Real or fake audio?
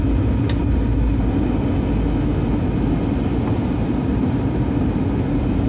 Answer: real